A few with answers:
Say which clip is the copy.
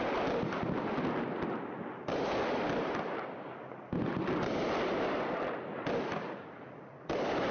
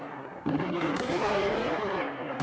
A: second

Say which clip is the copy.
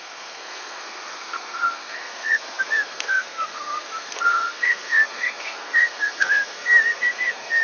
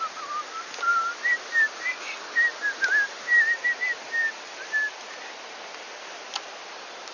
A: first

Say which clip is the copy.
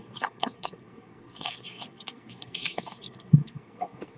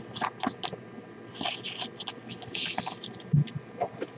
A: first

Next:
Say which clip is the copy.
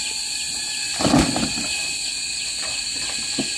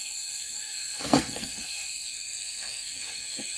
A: second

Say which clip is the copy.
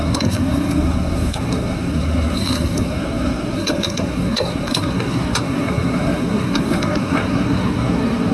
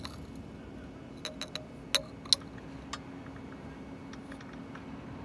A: first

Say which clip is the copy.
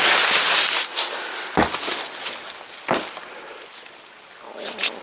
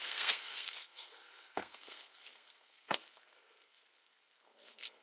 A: second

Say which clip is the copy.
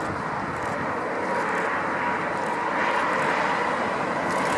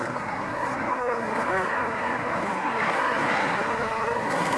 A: second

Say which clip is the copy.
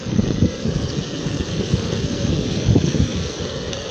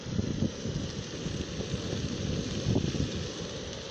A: first